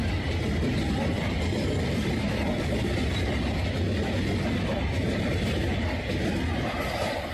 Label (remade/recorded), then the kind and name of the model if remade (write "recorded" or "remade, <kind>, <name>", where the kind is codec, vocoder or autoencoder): recorded